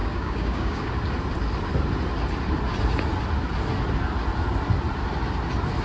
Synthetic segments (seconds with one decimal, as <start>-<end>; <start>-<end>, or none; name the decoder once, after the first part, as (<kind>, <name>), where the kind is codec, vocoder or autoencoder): 0.0-0.9 (codec, DAC)